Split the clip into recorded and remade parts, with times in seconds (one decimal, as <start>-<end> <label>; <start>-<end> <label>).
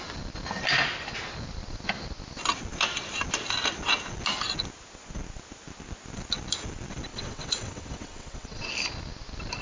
0.0-7.1 recorded; 7.1-8.7 remade; 8.7-9.6 recorded